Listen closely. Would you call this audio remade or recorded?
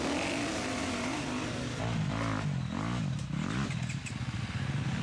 recorded